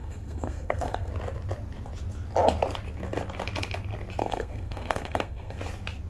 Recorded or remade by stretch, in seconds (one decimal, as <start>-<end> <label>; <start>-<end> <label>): 0.0-1.1 remade; 1.1-4.2 recorded; 4.2-5.6 remade; 5.6-6.1 recorded